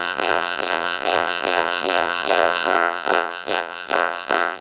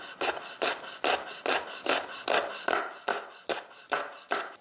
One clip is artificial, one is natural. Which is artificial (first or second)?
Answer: first